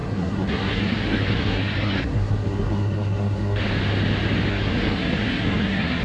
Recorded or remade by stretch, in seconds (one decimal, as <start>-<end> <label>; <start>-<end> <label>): 0.0-3.6 remade; 3.6-4.5 recorded; 4.5-6.0 remade